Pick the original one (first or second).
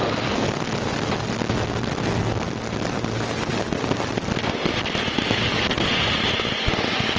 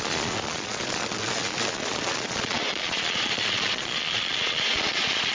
first